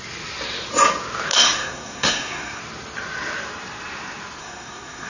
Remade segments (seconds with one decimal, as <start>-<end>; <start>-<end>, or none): 1.3-2.6; 4.4-5.1